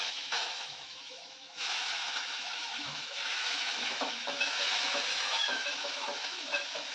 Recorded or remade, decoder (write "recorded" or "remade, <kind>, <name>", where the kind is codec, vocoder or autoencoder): remade, autoencoder, DAC-VAE